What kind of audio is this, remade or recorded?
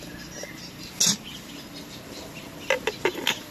recorded